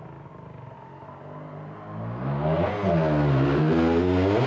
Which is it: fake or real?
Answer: real